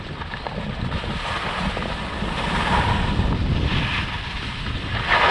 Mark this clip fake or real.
real